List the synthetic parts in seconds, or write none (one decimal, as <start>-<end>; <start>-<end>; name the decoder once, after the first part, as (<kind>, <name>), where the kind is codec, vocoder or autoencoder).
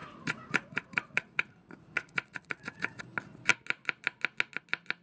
0.0-3.0 (vocoder, Vocos)